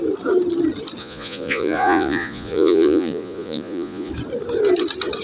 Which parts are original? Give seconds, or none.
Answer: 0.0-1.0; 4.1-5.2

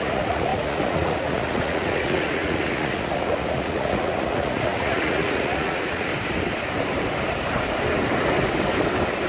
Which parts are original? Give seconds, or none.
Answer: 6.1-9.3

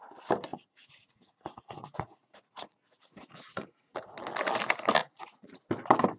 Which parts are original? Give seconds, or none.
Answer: 0.0-0.5; 4.1-5.0; 5.6-6.2

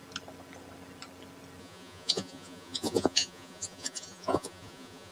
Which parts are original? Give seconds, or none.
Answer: 0.0-1.6

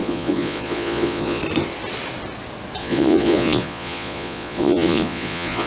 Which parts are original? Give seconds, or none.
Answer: 1.4-2.8

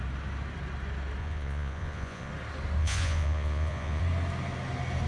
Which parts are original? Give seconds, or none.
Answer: 0.0-1.2; 2.3-2.8; 4.0-5.1

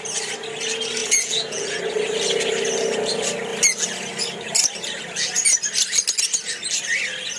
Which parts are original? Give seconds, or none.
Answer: 0.0-1.0; 1.8-7.4

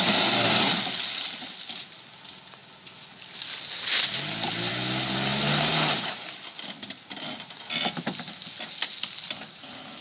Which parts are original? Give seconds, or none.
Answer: 0.0-10.0